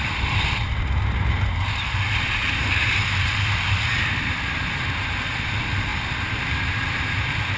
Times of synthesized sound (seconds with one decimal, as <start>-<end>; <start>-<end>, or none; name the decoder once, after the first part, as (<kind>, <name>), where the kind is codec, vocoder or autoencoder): none